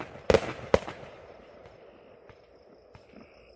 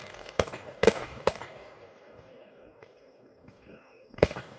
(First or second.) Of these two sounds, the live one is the first